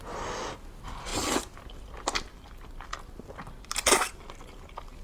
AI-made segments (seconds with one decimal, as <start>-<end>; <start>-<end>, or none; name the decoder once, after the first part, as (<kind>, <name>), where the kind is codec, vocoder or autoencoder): none